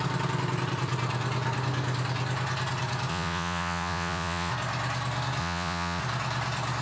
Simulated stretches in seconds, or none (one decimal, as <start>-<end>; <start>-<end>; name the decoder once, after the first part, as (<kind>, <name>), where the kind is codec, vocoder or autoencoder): 3.1-4.5 (vocoder, Vocos); 5.4-6.0